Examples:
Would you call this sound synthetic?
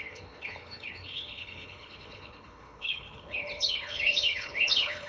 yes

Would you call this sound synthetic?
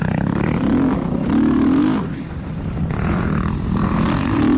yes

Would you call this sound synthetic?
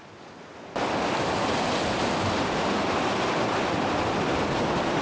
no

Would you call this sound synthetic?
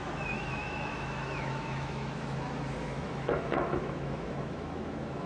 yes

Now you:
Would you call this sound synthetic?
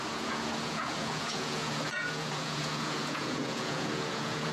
yes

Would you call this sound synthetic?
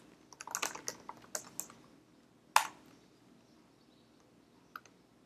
no